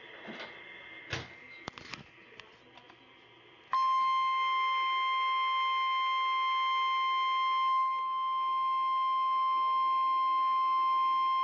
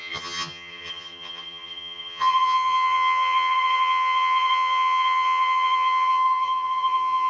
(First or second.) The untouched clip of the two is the first